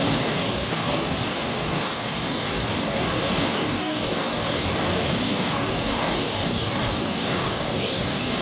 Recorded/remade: remade